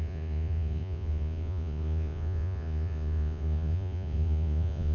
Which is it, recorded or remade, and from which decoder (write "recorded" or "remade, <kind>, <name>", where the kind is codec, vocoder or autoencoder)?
remade, vocoder, Vocos